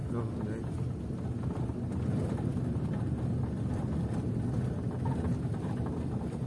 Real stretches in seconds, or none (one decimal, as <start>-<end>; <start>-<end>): 0.0-6.5